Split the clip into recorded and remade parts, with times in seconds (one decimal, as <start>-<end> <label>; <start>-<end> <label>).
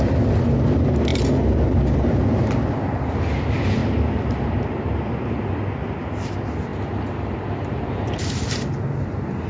0.0-9.5 recorded